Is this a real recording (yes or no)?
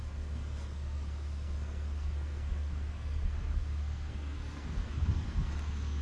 no